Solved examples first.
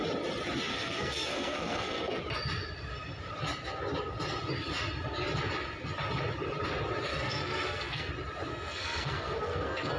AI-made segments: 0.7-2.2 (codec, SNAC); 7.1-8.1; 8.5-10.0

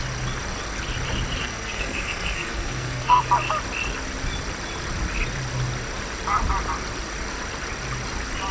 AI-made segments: 1.4-3.2 (codec, SNAC)

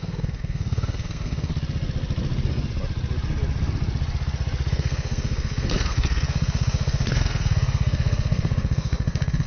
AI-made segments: 0.0-1.5 (codec, SNAC); 4.7-9.5

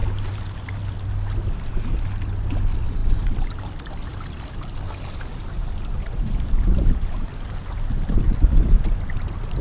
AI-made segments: none

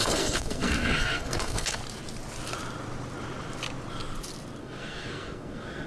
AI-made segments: 0.0-1.8 (codec, SNAC); 4.6-5.9

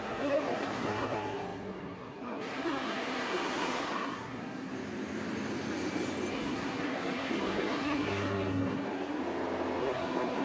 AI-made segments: 0.0-4.7 (codec, SNAC); 6.3-9.2; 9.8-10.4

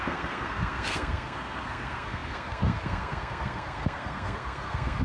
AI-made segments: 0.0-5.0 (codec, SNAC)